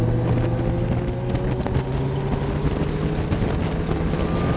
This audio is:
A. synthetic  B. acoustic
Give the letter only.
B